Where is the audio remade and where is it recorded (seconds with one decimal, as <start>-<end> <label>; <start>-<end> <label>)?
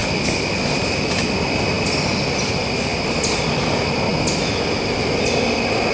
0.0-5.9 recorded